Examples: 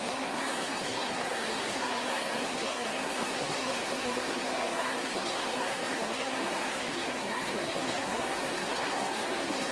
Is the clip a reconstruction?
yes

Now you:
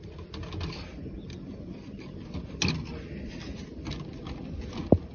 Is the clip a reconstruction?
no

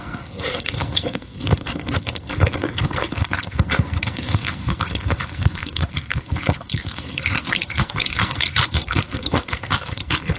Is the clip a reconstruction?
yes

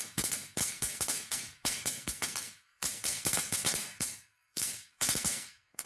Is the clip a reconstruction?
yes